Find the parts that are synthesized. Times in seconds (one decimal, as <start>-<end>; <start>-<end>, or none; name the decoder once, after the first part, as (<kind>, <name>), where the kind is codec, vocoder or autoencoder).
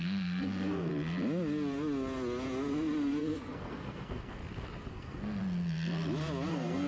0.0-0.9 (codec, SNAC); 3.2-4.4; 4.9-5.4; 6.5-6.9